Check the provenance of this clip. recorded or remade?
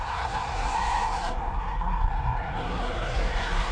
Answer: remade